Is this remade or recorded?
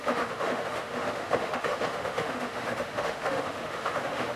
remade